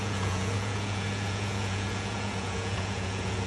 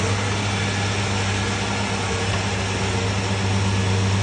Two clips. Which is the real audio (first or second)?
second